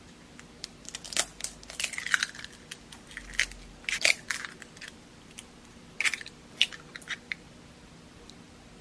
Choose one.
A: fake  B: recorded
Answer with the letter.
B